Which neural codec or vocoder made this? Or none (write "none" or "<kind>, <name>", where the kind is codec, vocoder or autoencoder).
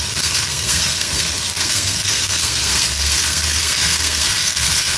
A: codec, SNAC